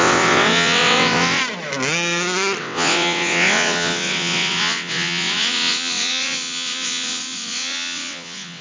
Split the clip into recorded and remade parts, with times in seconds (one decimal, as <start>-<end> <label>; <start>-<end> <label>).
0.0-1.4 remade; 1.4-2.6 recorded; 2.6-8.6 remade